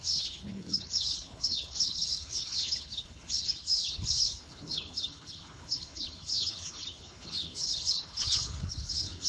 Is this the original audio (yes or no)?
no